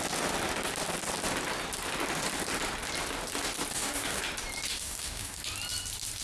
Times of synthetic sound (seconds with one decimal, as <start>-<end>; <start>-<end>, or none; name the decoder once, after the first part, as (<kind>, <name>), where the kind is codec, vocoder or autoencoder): 3.7-4.2 (codec, DAC); 4.7-5.4